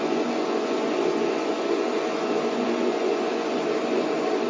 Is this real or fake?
fake